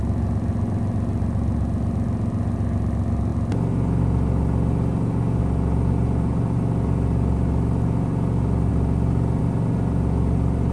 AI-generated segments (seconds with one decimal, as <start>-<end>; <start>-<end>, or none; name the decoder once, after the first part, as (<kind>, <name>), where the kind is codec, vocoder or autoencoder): none